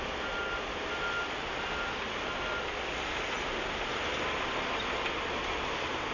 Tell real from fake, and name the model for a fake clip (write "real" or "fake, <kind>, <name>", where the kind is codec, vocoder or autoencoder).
real